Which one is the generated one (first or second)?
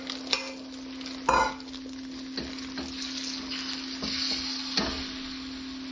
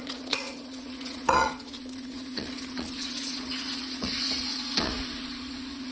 second